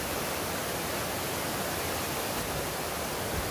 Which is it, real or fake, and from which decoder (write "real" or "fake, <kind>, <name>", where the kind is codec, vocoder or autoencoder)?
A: real